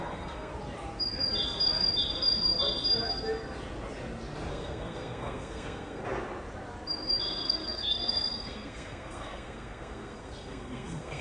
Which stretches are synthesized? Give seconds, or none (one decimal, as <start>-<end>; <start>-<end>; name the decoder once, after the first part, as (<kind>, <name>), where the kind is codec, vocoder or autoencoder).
0.0-0.5 (codec, SNAC); 4.5-6.0; 7.2-11.2